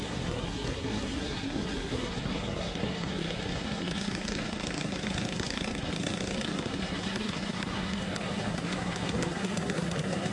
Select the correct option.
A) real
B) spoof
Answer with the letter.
B